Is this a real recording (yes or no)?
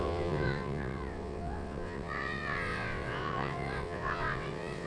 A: no